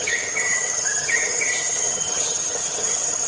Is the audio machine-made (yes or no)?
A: yes